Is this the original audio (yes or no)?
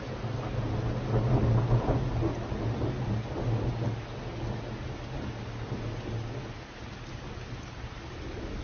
yes